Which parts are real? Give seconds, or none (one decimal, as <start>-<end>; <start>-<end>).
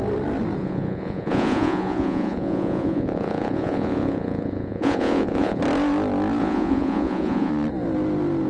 0.0-0.6; 5.6-6.4; 7.5-8.5